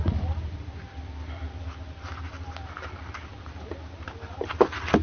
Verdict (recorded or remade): recorded